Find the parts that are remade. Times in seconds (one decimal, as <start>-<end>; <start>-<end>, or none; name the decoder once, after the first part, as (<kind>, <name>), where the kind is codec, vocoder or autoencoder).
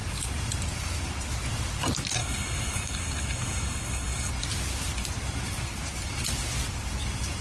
2.2-4.3 (codec, DAC)